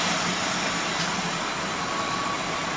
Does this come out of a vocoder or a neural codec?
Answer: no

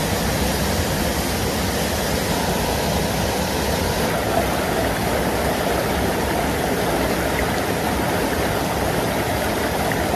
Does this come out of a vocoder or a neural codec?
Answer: no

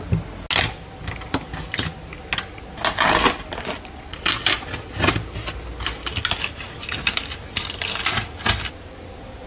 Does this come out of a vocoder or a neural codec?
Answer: no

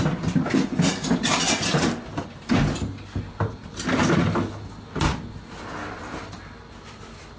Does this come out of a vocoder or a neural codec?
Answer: no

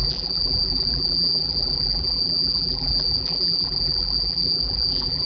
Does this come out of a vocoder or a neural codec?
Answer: yes